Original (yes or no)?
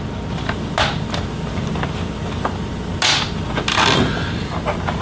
yes